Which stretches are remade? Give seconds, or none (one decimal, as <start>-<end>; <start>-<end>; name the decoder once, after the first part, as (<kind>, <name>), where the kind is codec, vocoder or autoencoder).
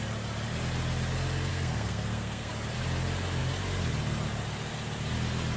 1.5-2.5 (codec, SNAC)